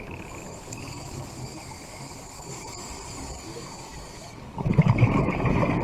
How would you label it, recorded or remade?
remade